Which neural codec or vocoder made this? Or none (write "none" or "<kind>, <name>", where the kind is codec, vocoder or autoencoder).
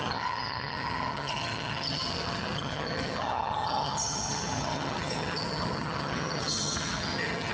vocoder, HiFi-GAN